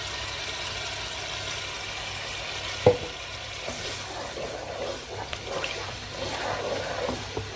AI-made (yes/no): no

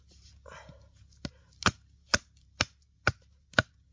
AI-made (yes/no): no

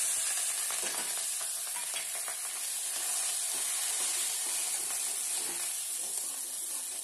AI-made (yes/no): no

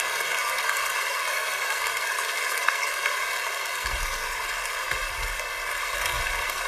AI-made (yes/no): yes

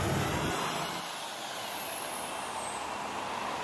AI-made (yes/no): no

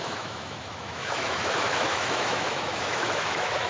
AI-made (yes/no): yes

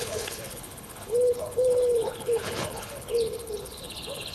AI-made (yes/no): yes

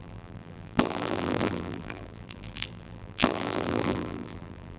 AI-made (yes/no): yes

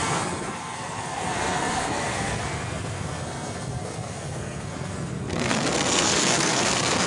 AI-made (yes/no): yes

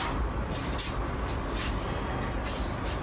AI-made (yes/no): no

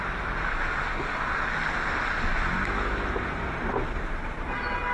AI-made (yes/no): no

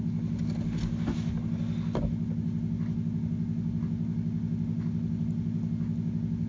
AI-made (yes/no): no